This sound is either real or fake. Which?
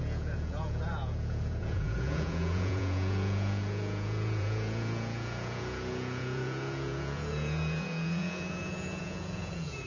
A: fake